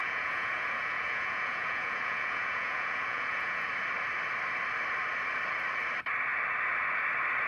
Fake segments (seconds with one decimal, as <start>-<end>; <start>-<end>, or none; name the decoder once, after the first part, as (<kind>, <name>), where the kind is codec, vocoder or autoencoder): 0.0-3.7 (vocoder, Vocos)